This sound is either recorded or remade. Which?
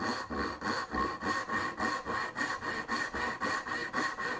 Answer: recorded